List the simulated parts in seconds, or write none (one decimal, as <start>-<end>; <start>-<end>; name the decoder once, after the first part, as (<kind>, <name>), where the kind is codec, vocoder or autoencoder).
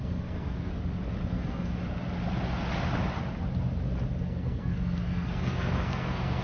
0.0-0.7 (codec, SNAC); 1.3-1.8; 4.2-6.4